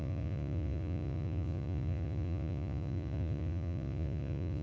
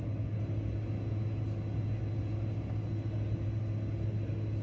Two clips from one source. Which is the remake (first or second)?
first